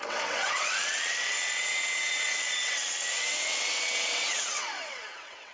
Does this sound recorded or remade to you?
remade